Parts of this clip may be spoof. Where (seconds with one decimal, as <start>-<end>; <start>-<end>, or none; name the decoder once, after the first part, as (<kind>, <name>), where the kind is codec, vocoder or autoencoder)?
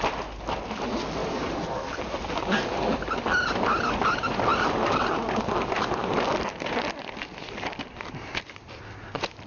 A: none